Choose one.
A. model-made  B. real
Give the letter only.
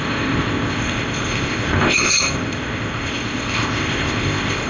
A